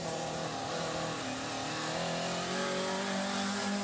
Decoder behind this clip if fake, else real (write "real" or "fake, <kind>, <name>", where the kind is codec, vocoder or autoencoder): real